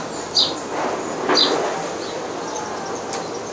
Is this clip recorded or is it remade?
recorded